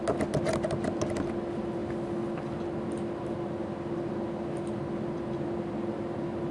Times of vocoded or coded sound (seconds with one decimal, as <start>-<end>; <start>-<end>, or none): none